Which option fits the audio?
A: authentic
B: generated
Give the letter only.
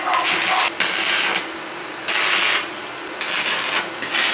A